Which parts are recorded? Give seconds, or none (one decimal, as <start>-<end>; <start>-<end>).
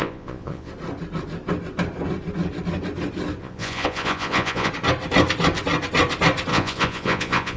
0.7-3.4; 4.7-6.5